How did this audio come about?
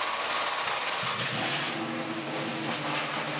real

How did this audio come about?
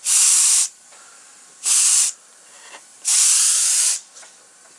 fake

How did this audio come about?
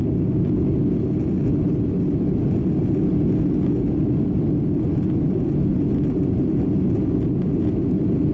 real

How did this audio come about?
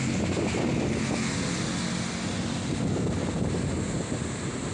real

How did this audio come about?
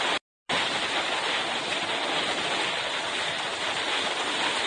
real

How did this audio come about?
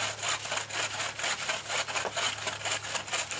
real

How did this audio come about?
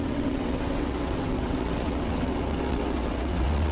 fake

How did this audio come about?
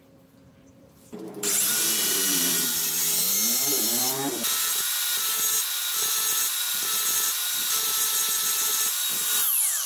fake